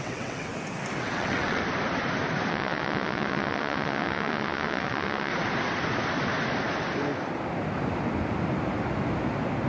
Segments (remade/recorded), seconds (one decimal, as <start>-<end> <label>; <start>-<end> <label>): 0.0-0.5 remade; 0.5-1.0 recorded; 1.0-1.6 remade; 1.6-2.5 recorded; 2.5-5.3 remade; 5.3-9.7 recorded